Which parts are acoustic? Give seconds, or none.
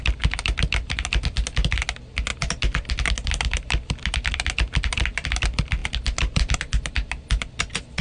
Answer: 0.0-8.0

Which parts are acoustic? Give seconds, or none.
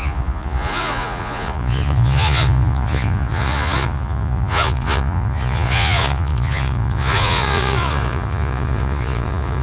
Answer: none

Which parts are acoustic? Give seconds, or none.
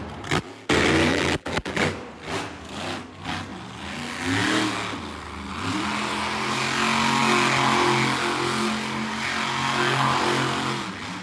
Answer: 0.0-1.1; 1.8-11.2